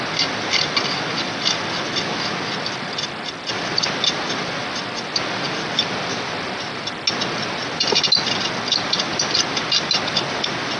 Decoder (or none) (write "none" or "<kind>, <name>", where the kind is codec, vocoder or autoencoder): none